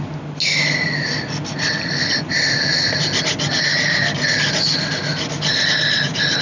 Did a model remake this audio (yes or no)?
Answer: no